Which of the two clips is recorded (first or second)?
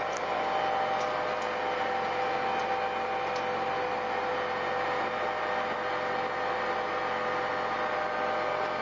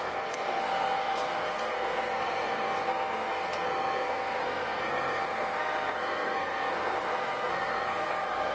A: first